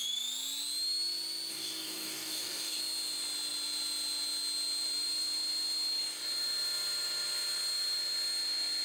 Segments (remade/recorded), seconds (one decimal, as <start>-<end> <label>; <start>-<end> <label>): 0.0-1.5 recorded; 1.5-2.8 remade; 2.8-8.8 recorded